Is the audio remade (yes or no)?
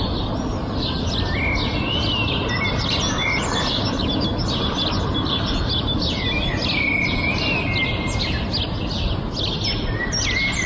no